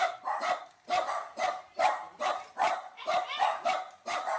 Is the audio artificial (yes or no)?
no